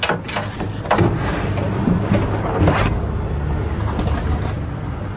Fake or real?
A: real